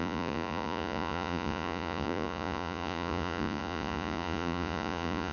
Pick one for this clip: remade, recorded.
remade